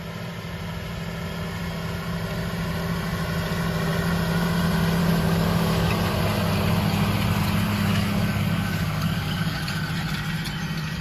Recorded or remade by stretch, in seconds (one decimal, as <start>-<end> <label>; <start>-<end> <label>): 0.0-5.0 recorded; 5.0-5.9 remade; 5.9-7.9 recorded; 7.9-9.7 remade; 9.7-11.0 recorded